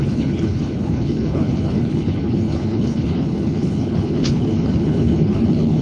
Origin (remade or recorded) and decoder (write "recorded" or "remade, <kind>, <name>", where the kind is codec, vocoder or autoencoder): remade, codec, HILCodec